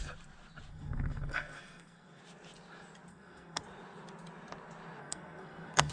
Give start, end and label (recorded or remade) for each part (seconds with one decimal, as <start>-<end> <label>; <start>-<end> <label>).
0.0-0.7 recorded; 0.7-2.2 remade; 2.2-3.1 recorded; 3.1-3.6 remade; 3.6-5.0 recorded; 5.0-5.9 remade